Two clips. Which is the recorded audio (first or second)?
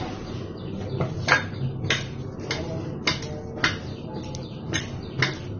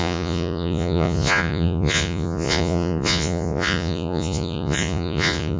first